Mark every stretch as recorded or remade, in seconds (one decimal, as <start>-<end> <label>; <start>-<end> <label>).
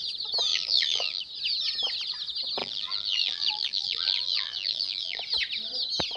0.0-0.5 recorded; 0.5-1.2 remade; 1.2-2.6 recorded; 2.6-5.2 remade; 5.2-6.2 recorded